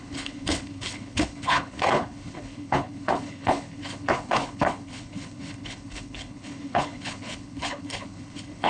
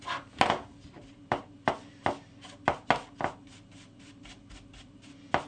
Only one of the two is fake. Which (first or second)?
first